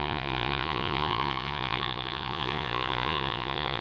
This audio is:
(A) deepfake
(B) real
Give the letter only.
A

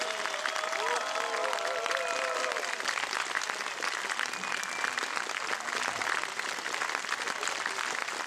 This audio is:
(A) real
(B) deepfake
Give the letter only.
A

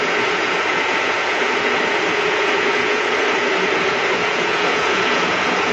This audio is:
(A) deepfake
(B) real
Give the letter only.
A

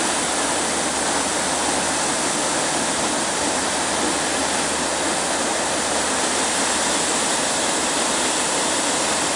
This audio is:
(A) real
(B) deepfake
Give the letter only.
A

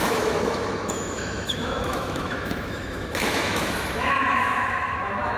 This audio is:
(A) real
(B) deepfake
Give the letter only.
B